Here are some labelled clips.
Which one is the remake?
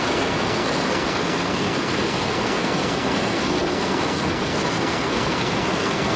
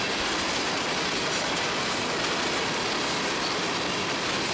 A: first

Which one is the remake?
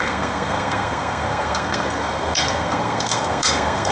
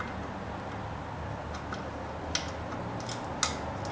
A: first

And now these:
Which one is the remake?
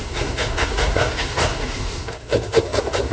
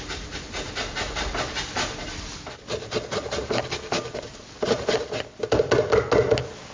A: first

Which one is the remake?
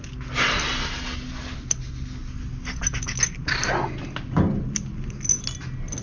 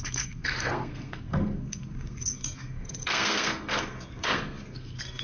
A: second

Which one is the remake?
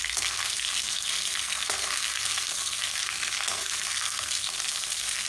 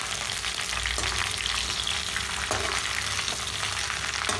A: first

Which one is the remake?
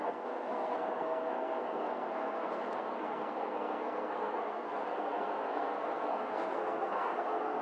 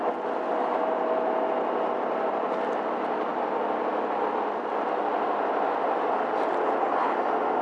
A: first